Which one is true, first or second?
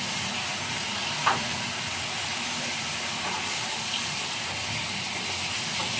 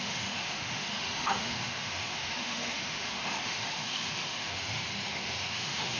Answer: first